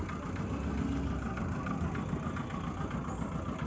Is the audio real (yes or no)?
yes